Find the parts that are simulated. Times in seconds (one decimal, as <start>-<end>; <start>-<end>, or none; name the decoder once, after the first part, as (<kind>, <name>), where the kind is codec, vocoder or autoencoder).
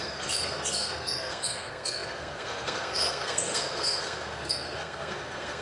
0.0-5.6 (codec, SNAC)